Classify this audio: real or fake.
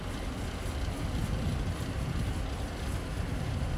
real